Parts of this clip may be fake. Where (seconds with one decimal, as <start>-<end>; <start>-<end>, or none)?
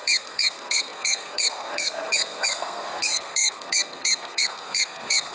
0.0-5.3